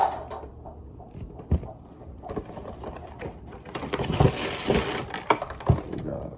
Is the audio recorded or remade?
remade